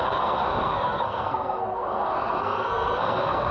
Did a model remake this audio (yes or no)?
yes